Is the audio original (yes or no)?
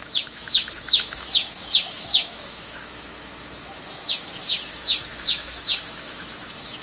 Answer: no